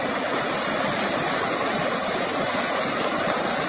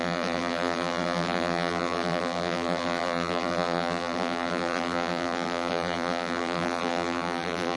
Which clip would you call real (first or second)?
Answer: first